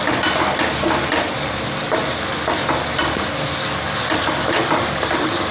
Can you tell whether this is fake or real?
real